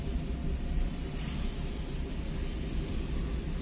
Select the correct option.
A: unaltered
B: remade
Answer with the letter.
A